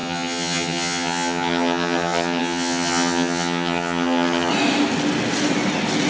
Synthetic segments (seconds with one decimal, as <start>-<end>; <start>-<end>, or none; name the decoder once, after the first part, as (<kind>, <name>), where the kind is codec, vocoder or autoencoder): 0.0-4.5 (vocoder, HiFi-GAN)